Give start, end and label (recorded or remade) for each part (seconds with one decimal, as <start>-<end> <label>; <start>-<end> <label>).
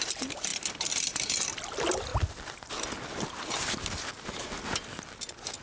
0.0-2.1 remade; 2.1-5.6 recorded